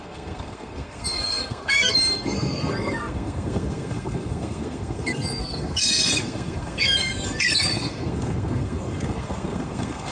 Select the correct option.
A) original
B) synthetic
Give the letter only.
B